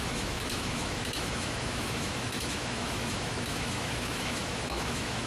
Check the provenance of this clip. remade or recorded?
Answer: remade